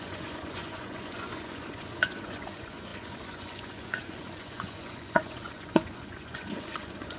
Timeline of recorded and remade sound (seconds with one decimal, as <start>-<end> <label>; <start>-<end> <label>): 0.0-7.2 remade